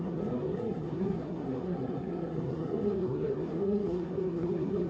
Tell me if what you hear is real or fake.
fake